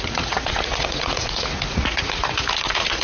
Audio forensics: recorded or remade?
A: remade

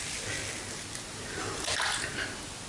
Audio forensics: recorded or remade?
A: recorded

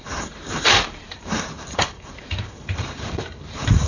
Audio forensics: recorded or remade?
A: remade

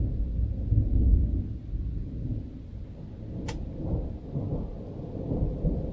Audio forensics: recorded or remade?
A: recorded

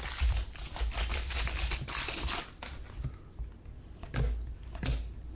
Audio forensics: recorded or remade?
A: recorded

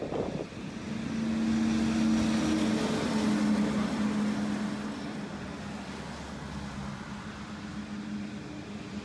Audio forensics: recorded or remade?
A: recorded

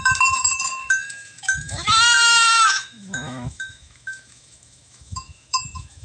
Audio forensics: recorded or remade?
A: remade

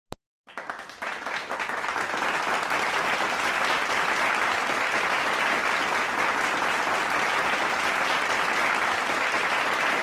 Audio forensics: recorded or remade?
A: recorded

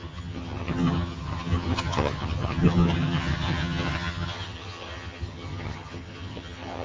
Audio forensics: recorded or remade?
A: remade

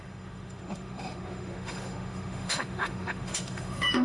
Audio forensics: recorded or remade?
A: remade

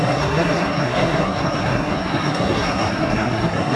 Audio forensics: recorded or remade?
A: remade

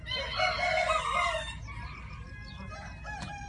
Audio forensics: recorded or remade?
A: recorded